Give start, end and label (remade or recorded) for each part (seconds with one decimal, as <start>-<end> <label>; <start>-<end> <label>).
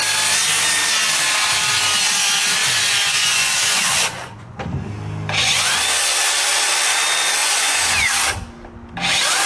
0.0-2.6 recorded; 2.6-4.6 remade; 4.6-5.4 recorded; 5.4-6.0 remade; 6.0-7.4 recorded; 7.4-8.1 remade; 8.1-9.5 recorded